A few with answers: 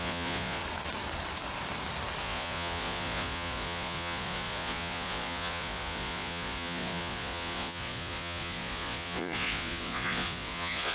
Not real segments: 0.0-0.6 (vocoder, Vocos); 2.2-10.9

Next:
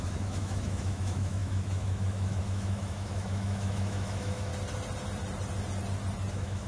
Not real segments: 0.0-4.5 (autoencoder, DAC-VAE); 6.3-6.7

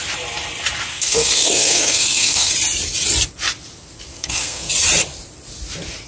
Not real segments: 0.9-2.5 (codec, SNAC); 4.1-4.7

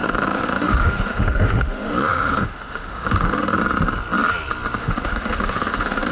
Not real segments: 0.0-3.6 (autoencoder, DAC-VAE); 4.8-6.1

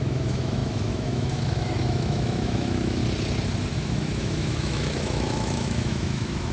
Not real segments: 0.0-3.0 (autoencoder, DAC-VAE); 3.7-6.5

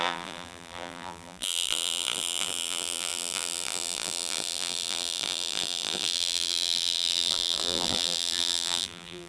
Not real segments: 0.0-9.3 (vocoder, BigVGAN v2)